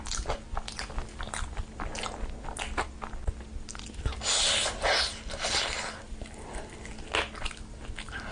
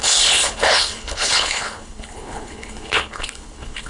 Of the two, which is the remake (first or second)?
second